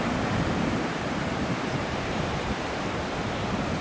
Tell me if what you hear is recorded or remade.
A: remade